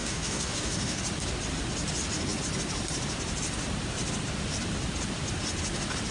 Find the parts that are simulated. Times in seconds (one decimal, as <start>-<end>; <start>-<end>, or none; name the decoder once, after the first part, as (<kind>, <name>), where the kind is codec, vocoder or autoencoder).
0.0-1.0 (codec, DAC)